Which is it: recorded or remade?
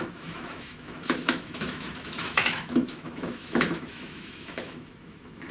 remade